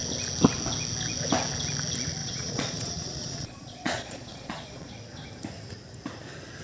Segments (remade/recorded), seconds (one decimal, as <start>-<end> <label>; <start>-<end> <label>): 0.0-2.2 recorded; 2.2-4.9 remade; 4.9-6.6 recorded